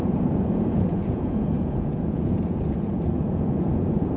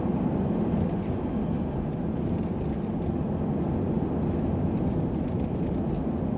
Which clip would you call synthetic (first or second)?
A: first